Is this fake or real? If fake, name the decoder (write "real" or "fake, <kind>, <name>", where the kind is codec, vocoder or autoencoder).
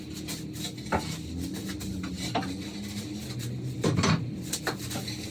real